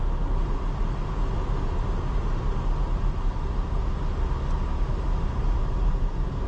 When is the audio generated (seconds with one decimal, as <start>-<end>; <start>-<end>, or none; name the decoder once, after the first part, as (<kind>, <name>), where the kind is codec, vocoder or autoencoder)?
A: 4.7-5.3 (autoencoder, DAC-VAE)

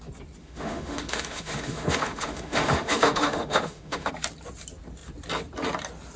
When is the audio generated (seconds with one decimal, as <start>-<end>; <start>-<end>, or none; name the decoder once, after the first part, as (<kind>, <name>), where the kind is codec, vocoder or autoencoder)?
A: 0.4-4.1 (autoencoder, DAC-VAE)

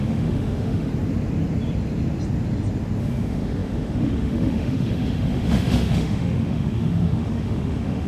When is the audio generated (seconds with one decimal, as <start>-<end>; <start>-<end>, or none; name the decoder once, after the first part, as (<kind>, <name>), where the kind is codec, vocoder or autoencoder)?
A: 0.0-0.9 (autoencoder, DAC-VAE); 3.0-8.1

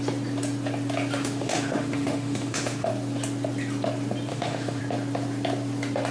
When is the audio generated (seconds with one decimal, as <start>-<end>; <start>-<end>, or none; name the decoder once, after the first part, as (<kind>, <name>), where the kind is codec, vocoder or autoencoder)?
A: 1.2-2.9 (autoencoder, DAC-VAE); 4.3-4.8